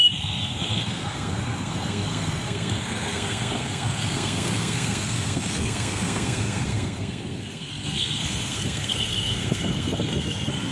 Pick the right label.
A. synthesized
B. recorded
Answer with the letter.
A